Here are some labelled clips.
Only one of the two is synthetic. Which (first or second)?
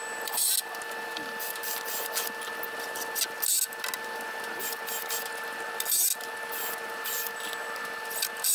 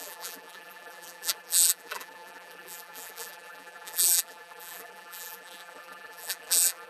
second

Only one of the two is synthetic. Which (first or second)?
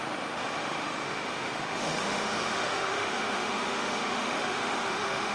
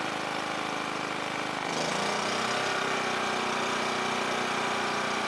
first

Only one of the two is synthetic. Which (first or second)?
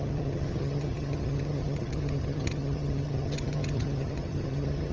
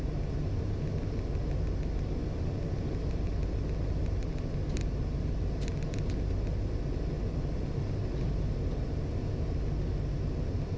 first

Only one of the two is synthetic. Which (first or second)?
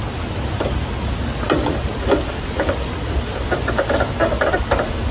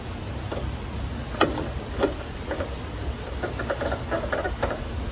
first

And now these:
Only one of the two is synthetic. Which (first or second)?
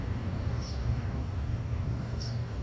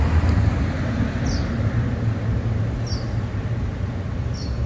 first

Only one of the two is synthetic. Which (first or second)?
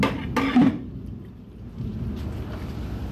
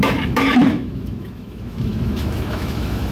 second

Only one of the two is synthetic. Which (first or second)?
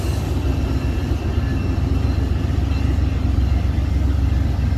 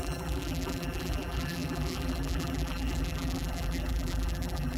second